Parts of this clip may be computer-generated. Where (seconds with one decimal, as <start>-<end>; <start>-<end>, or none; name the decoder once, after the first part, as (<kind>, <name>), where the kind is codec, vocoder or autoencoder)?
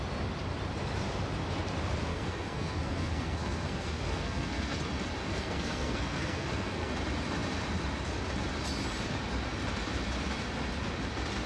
2.1-4.8 (codec, SNAC); 5.2-6.9